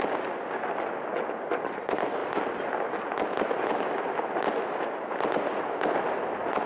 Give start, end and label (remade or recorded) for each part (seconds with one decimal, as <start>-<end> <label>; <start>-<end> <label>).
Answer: 0.0-6.7 recorded